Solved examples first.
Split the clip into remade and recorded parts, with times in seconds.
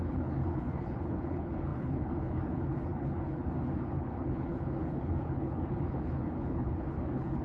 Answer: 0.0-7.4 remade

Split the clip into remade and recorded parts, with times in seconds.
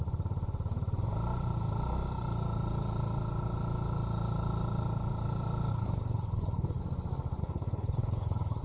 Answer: 0.0-5.7 recorded; 5.7-6.8 remade; 6.8-7.4 recorded; 7.4-8.6 remade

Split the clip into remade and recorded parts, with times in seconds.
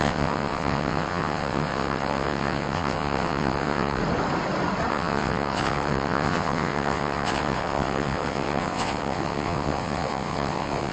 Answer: 0.0-4.0 remade; 4.0-4.9 recorded; 4.9-10.9 remade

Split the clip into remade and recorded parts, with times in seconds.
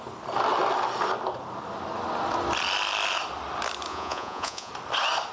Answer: 0.0-3.9 recorded; 3.9-4.7 remade; 4.7-5.3 recorded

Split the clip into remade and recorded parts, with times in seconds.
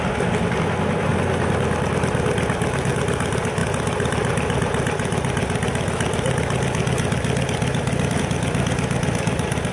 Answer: 0.0-9.7 recorded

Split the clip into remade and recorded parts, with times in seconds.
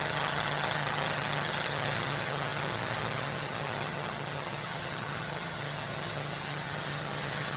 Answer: 0.0-7.6 remade